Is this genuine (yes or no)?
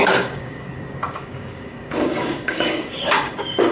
no